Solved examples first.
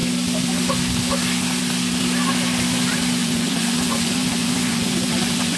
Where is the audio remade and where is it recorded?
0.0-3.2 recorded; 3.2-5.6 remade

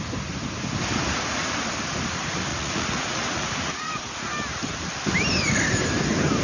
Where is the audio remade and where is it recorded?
0.0-2.5 recorded; 2.5-3.9 remade; 3.9-6.4 recorded